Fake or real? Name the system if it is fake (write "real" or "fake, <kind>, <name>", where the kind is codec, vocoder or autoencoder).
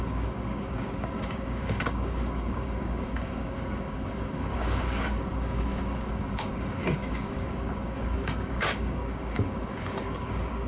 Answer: fake, codec, DAC